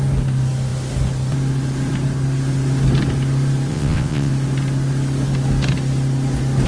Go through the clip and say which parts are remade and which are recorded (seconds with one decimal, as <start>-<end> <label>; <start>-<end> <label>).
0.0-3.7 recorded; 3.7-4.3 remade; 4.3-6.7 recorded